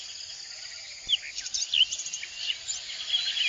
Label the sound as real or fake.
real